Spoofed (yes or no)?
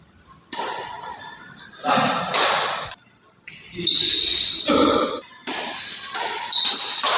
no